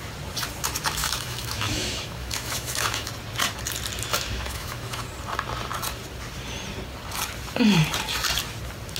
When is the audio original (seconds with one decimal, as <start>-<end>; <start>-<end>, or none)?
0.0-1.0; 3.1-4.1; 5.0-9.0